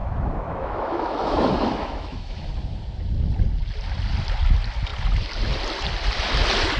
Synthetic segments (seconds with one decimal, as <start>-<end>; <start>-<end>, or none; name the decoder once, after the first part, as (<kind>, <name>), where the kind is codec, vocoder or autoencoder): 0.0-2.5 (autoencoder, DAC-VAE)